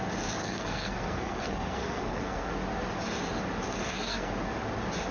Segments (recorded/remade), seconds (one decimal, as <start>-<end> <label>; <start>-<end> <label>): 0.0-0.4 recorded; 0.4-2.5 remade; 2.5-3.8 recorded; 3.8-4.3 remade; 4.3-5.1 recorded